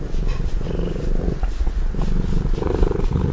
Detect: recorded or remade remade